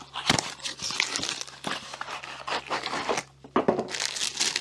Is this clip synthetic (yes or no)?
no